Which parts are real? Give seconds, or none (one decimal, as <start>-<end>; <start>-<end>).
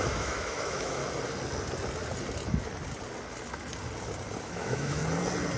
1.0-4.4; 5.0-5.6